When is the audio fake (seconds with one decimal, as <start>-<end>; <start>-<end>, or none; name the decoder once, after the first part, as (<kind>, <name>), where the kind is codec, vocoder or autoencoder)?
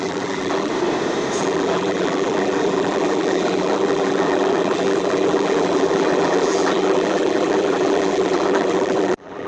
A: 0.0-0.7 (vocoder, BigVGAN v2); 1.4-9.5